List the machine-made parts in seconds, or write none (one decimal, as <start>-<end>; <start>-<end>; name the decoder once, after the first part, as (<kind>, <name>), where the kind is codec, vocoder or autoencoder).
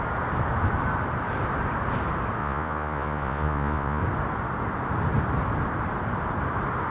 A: 2.4-4.0 (vocoder, Vocos)